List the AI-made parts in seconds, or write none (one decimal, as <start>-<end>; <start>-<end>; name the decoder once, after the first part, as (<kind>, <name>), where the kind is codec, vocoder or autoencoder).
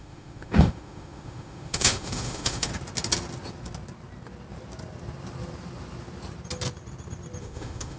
0.0-2.7 (autoencoder, DAC-VAE); 7.4-8.0